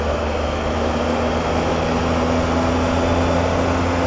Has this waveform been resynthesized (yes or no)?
no